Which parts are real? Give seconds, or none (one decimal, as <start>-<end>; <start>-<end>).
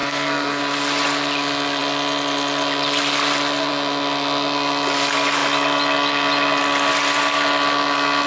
0.6-8.3